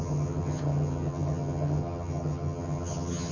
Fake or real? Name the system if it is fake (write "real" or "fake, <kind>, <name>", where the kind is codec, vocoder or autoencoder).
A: fake, vocoder, HiFi-GAN